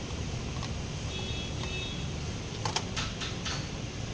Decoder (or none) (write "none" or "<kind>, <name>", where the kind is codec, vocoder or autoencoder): vocoder, BigVGAN v2